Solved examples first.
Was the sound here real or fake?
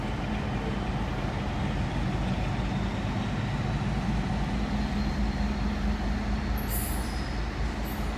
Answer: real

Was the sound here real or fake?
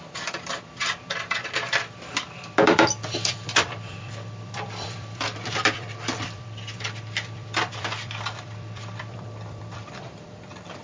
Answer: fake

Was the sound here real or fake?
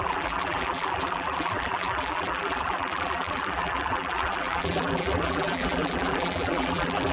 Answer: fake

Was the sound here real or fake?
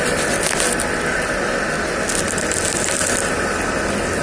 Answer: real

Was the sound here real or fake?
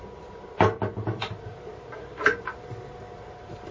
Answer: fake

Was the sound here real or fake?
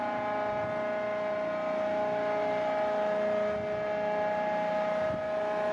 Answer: real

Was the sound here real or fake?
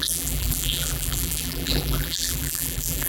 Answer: fake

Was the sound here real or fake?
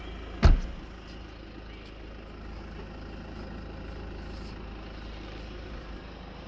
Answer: real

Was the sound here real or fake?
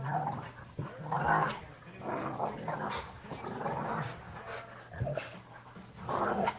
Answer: real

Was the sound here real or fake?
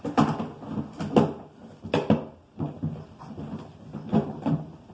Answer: real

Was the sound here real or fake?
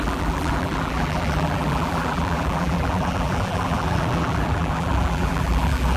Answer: fake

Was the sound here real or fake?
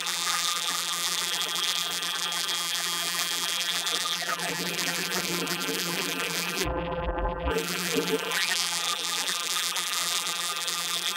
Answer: fake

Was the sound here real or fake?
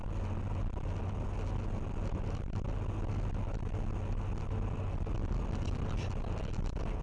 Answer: real